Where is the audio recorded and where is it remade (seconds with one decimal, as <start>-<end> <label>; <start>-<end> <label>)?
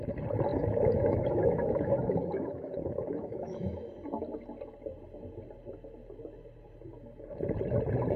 0.0-0.5 recorded; 0.5-3.9 remade; 3.9-8.2 recorded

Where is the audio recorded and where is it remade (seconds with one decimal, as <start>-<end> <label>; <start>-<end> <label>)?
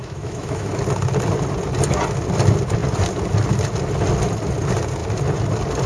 0.0-0.7 remade; 0.7-5.9 recorded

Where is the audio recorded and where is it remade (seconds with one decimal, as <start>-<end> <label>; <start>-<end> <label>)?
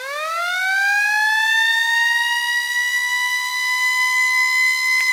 0.0-5.1 recorded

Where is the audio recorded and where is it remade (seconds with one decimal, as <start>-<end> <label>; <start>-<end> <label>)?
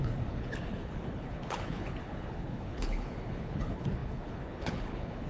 0.0-5.3 remade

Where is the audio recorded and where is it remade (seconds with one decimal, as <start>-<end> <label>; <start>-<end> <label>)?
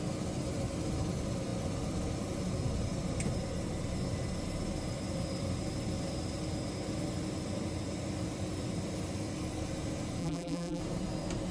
0.0-10.2 recorded; 10.2-10.8 remade; 10.8-11.5 recorded